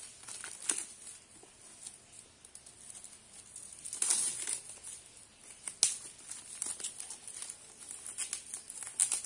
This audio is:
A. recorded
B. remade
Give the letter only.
A